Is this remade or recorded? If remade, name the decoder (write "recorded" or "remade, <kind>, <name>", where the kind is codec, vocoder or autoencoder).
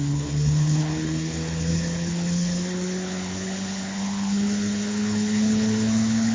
remade, codec, HILCodec